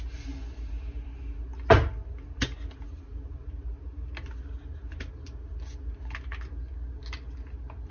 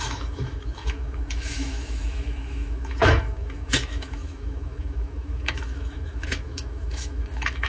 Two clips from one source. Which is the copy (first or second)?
second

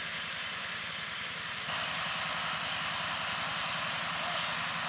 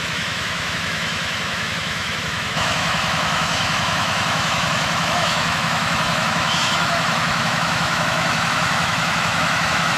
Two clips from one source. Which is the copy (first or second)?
second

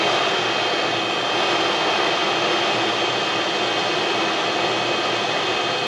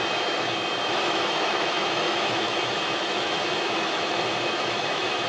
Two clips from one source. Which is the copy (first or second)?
second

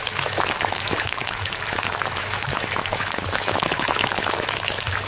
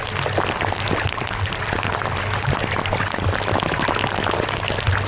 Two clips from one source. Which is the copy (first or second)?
first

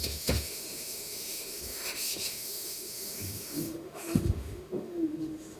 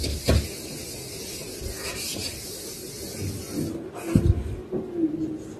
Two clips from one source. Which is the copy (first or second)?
first